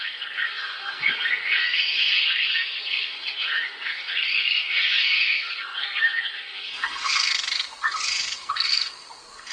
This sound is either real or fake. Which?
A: fake